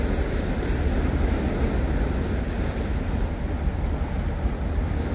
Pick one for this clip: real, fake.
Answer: real